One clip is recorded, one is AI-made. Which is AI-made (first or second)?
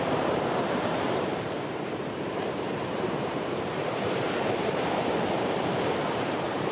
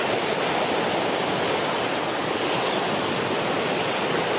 first